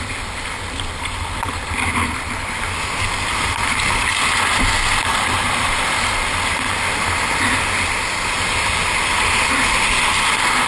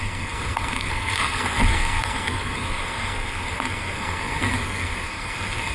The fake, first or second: second